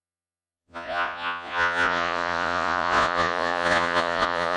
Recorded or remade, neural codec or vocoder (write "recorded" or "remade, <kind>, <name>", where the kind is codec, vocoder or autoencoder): remade, vocoder, Vocos